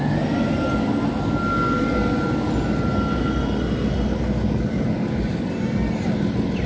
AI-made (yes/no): no